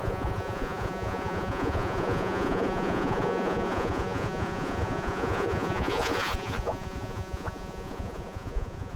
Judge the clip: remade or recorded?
remade